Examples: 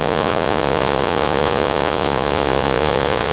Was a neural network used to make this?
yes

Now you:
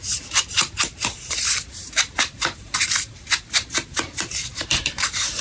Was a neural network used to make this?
yes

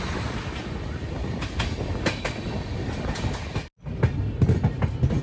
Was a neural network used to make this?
no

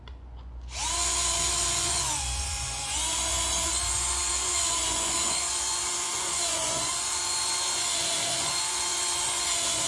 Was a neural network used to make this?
yes